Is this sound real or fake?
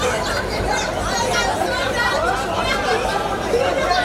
fake